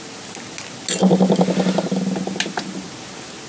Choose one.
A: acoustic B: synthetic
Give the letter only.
A